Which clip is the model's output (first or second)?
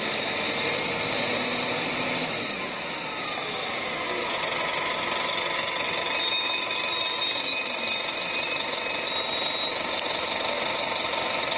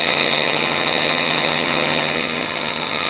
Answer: second